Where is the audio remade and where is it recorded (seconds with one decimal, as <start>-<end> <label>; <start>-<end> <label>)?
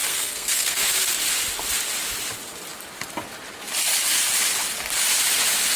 0.0-0.8 remade; 0.8-5.8 recorded